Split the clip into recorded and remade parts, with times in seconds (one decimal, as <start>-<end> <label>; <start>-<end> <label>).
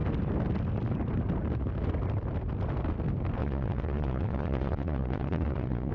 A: 0.0-3.4 recorded; 3.4-5.9 remade